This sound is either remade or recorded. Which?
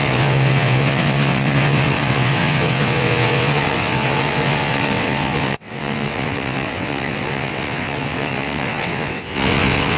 remade